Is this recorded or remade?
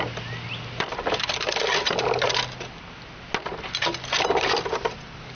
recorded